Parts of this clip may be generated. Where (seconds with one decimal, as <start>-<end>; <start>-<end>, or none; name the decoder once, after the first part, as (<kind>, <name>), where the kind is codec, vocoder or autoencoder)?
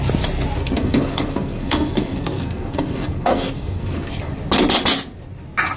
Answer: 0.6-4.1 (codec, SNAC)